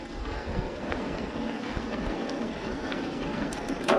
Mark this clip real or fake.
fake